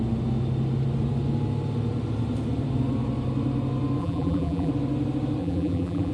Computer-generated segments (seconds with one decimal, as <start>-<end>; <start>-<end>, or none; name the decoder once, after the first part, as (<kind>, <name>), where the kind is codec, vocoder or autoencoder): 4.0-4.7 (vocoder, BigVGAN v2); 5.4-6.1